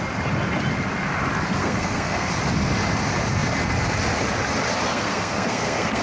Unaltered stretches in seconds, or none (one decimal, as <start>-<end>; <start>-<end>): 0.0-1.6; 2.3-4.9